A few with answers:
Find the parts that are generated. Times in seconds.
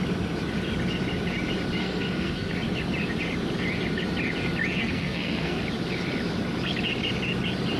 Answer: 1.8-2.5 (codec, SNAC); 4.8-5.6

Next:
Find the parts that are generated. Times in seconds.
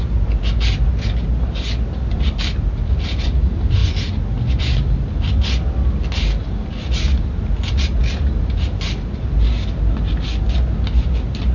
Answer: none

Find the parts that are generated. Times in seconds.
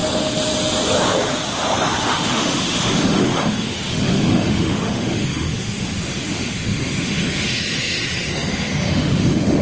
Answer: 2.0-9.6 (autoencoder, DAC-VAE)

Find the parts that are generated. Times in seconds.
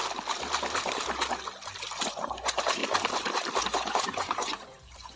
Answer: 2.1-2.8 (vocoder, Vocos); 3.6-5.2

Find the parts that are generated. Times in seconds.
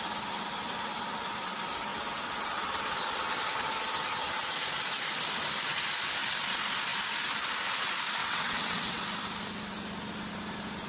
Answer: 8.2-9.0 (vocoder, WaveNeXt)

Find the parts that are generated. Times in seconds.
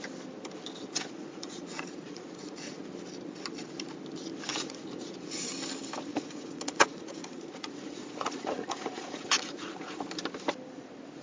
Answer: 1.2-2.8 (vocoder, Vocos); 4.5-5.5; 6.1-10.0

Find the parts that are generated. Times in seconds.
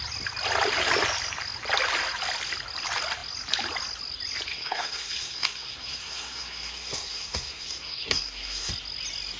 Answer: 4.5-8.7 (codec, SNAC)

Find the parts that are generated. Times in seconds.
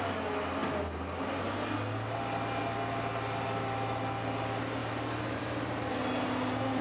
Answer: 4.8-5.9 (vocoder, BigVGAN v2)